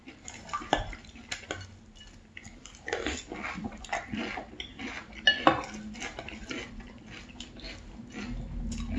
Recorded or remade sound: recorded